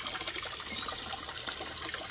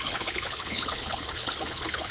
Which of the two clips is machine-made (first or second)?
second